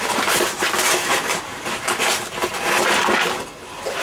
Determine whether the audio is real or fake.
real